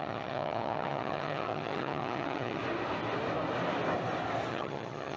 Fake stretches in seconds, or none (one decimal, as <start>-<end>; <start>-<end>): 0.0-2.6; 4.5-5.2